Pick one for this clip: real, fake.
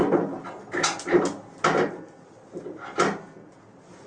real